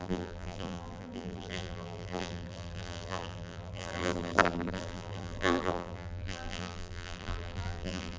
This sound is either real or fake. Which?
fake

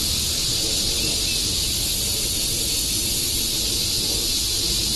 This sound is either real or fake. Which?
real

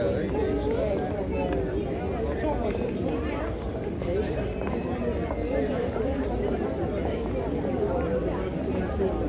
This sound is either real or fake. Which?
real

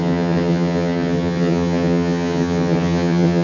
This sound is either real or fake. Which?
fake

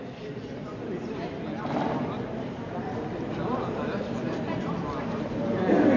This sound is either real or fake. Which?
real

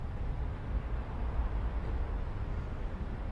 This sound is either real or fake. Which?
fake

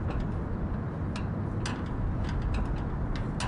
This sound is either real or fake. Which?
real